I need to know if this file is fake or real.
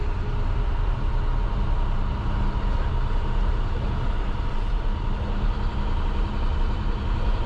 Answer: real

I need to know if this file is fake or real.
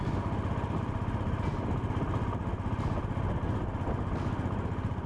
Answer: real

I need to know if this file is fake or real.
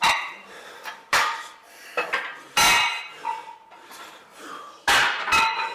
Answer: real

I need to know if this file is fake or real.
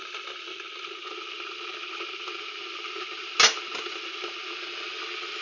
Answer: real